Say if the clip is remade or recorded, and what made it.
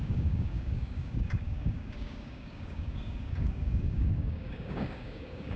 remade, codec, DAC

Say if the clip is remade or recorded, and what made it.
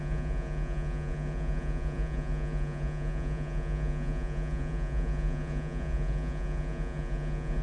remade, vocoder, Vocos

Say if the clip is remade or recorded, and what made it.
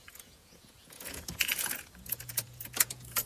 remade, vocoder, Vocos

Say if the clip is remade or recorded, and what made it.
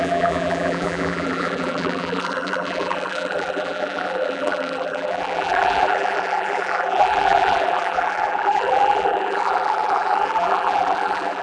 remade, vocoder, BigVGAN v2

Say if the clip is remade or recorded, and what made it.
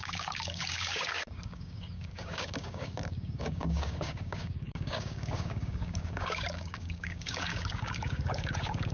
remade, codec, DAC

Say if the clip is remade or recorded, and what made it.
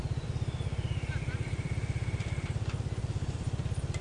remade, vocoder, BigVGAN v2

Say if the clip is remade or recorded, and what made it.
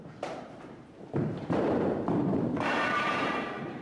remade, vocoder, BigVGAN v2